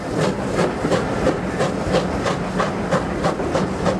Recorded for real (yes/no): yes